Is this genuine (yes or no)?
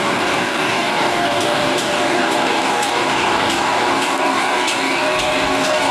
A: no